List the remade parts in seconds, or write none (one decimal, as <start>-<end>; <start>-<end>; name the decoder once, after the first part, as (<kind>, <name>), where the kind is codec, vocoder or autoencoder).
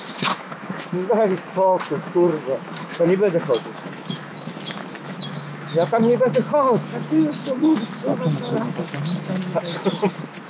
0.0-10.5 (autoencoder, DAC-VAE)